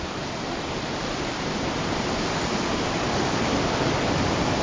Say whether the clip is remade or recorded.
recorded